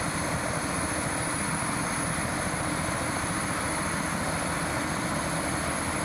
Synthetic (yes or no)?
no